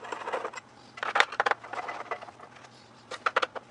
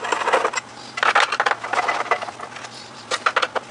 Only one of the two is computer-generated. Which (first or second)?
first